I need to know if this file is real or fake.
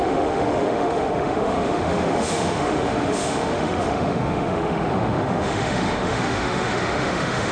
fake